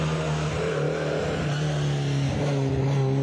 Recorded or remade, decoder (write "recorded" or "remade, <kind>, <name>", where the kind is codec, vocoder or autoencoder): recorded